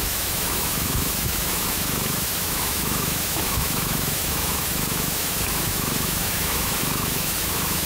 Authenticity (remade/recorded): remade